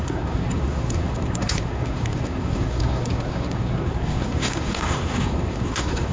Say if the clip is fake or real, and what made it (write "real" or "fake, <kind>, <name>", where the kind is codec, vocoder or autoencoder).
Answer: fake, codec, SNAC